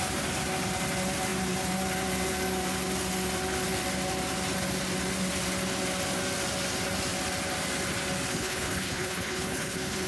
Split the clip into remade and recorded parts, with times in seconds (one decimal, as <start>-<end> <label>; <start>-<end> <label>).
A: 0.0-8.3 recorded; 8.3-10.1 remade